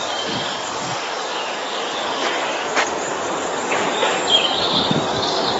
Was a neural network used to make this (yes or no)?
yes